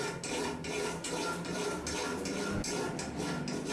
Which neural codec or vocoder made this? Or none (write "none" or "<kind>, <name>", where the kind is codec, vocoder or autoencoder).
none